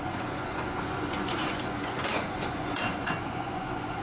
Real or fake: fake